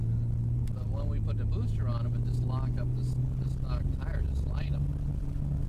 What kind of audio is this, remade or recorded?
recorded